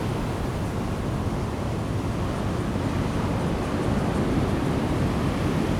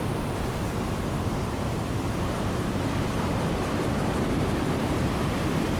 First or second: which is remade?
second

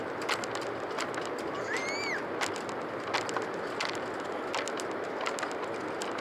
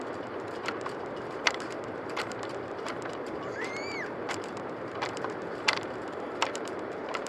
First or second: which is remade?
second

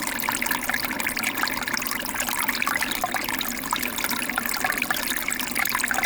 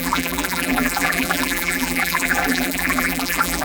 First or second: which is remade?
second